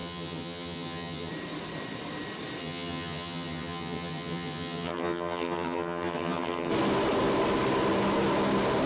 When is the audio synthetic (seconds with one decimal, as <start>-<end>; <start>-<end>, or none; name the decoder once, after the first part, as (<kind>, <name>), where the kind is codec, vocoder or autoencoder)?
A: 0.0-1.3 (vocoder, HiFi-GAN); 2.6-6.7